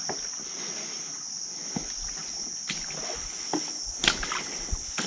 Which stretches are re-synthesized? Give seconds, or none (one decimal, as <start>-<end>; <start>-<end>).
none